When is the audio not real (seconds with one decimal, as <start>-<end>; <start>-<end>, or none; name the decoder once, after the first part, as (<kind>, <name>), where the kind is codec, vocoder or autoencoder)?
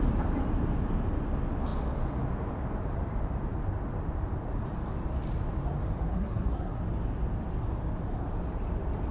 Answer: 6.1-6.8 (codec, SNAC)